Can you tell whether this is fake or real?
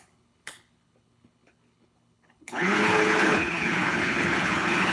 fake